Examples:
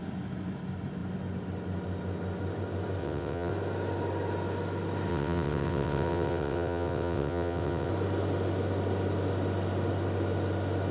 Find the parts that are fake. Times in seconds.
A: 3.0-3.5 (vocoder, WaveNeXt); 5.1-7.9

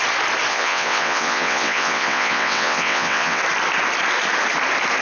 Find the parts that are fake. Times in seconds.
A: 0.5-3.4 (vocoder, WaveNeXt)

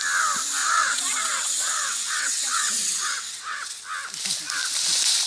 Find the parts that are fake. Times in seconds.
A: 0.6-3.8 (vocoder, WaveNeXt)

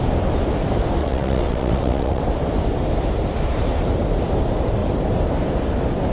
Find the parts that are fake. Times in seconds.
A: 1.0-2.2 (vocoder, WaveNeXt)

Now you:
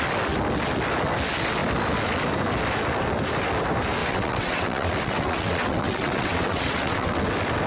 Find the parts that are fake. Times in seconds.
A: 4.0-7.2 (vocoder, WaveNeXt)

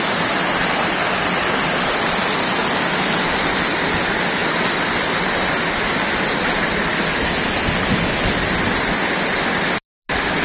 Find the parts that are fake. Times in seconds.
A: none

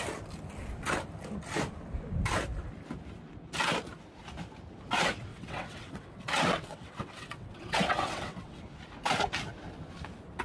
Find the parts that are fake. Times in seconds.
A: 5.3-8.6 (vocoder, WaveNeXt)